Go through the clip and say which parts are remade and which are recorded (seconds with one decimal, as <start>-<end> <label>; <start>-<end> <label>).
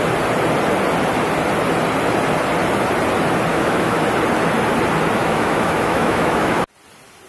0.0-3.5 recorded; 3.5-4.0 remade; 4.0-5.2 recorded; 5.2-6.6 remade; 6.6-7.3 recorded